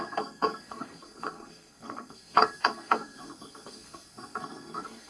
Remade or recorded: remade